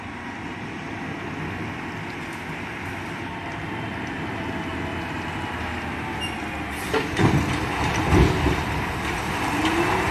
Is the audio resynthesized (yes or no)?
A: no